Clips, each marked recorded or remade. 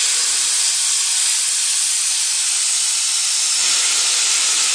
recorded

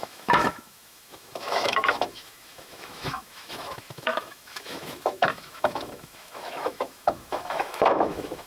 remade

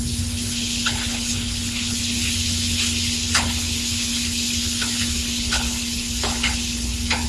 remade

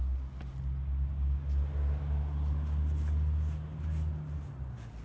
recorded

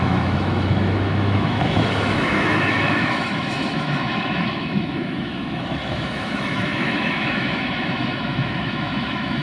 remade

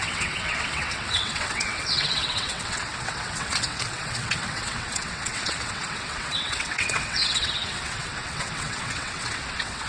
remade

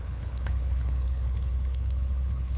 remade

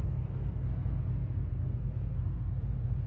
remade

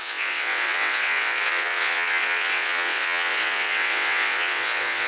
remade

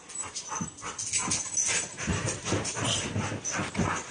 recorded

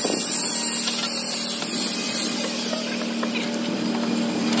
recorded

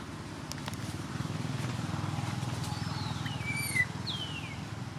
recorded